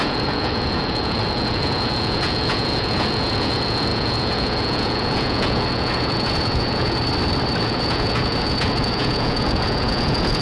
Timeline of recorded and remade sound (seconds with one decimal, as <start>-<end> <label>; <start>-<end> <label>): 0.0-7.0 remade; 7.0-7.6 recorded; 7.6-10.4 remade